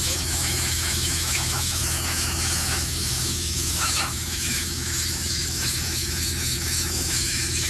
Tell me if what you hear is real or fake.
fake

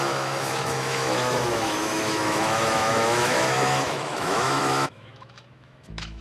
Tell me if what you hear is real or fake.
fake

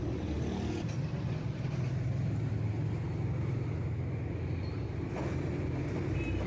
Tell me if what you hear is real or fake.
real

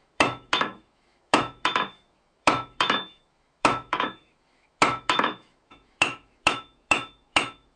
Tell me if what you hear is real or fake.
fake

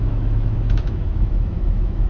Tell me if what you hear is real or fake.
fake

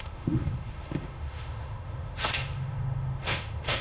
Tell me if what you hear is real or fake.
fake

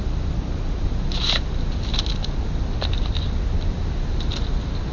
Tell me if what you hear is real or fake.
real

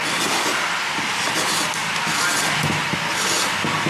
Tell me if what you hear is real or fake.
real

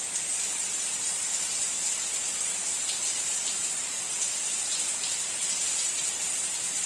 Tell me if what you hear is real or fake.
real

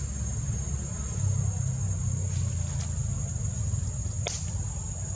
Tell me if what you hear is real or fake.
real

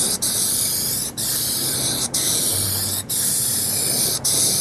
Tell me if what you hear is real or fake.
real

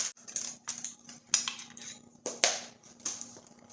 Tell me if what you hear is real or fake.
real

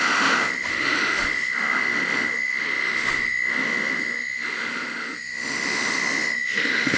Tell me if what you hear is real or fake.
fake